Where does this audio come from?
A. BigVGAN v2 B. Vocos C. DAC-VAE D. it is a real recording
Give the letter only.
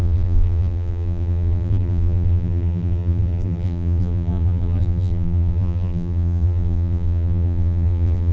A